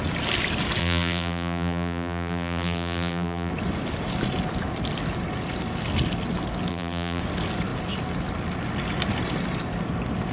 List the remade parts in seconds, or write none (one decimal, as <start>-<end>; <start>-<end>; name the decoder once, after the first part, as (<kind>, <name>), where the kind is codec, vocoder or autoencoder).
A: 0.8-3.5 (vocoder, BigVGAN v2); 6.7-7.2